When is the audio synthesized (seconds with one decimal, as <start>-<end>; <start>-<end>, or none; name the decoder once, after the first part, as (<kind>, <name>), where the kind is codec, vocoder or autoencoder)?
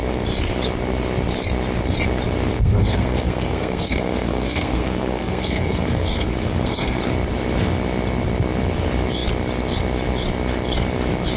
2.5-7.0 (codec, SNAC)